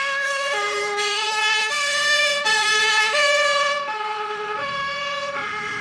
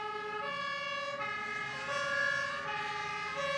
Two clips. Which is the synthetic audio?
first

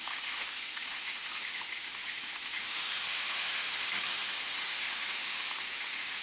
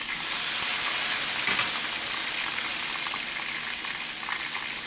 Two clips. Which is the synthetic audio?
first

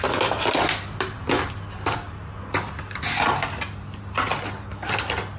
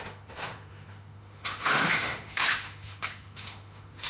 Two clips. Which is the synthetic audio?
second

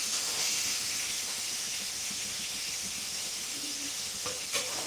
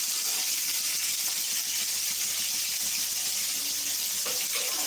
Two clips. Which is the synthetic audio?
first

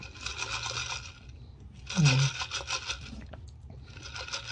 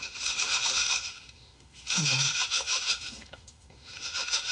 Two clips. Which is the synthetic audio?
second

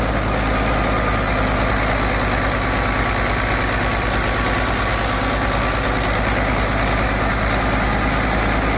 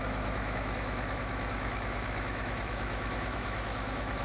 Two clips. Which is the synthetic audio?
second